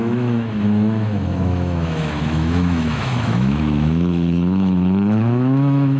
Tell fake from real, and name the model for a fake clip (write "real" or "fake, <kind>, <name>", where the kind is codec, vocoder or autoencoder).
fake, autoencoder, DAC-VAE